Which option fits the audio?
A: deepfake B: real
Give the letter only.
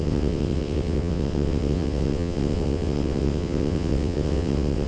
A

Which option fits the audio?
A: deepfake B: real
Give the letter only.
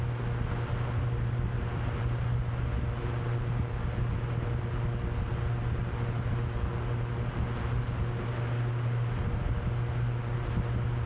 B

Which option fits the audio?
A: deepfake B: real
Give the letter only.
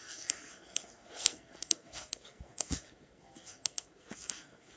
A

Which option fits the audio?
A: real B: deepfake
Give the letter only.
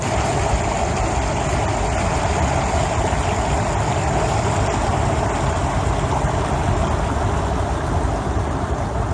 A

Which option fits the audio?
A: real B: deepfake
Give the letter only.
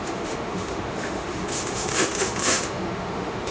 B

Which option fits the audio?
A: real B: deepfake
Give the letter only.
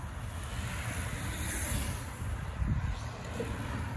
A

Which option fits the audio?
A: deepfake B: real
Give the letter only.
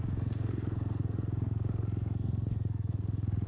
A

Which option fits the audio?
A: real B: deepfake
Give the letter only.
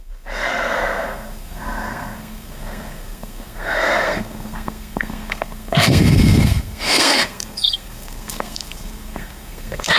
B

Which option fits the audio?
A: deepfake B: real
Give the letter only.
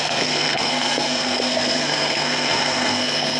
A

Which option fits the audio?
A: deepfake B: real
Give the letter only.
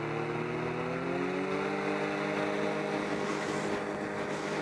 B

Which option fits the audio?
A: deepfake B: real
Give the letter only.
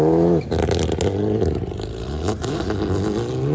B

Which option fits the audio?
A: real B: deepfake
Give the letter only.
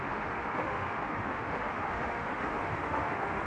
B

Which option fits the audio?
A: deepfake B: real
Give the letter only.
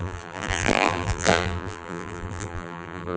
A